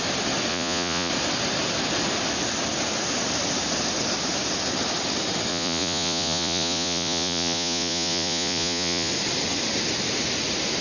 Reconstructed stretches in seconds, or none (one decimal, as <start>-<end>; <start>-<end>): 0.5-1.1; 5.5-9.1